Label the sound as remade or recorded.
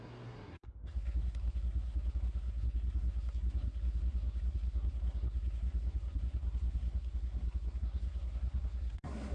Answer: remade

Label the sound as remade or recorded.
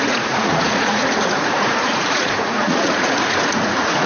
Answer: remade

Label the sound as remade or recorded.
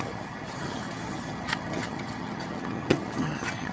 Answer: remade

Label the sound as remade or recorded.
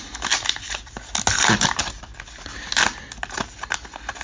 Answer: recorded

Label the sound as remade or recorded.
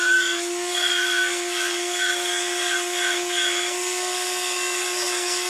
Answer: remade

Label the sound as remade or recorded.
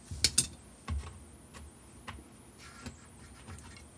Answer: recorded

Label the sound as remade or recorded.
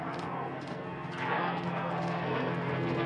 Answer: remade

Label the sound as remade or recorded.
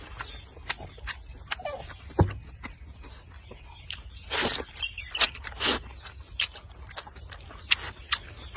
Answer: recorded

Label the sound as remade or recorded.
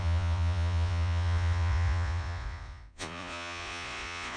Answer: remade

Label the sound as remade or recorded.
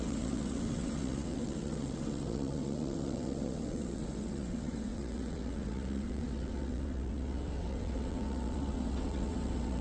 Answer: remade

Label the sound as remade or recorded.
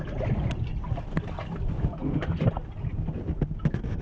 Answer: recorded